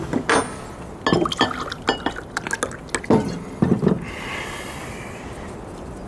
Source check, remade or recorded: recorded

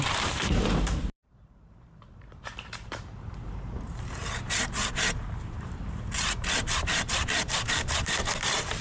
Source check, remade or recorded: remade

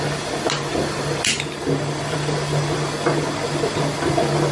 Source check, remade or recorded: recorded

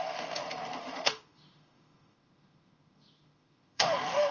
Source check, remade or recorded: remade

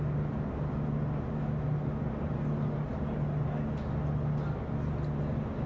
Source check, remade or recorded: recorded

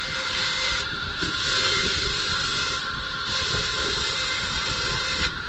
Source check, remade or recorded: recorded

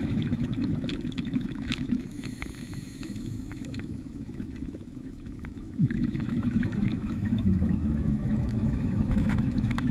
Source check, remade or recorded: remade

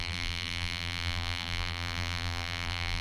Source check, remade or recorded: remade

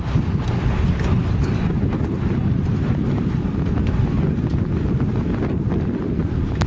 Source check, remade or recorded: recorded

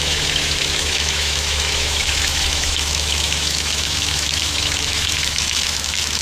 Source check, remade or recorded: remade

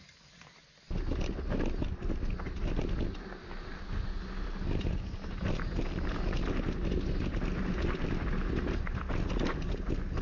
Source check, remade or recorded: recorded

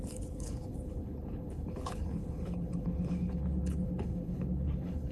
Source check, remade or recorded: remade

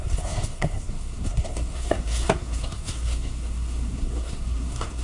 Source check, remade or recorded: remade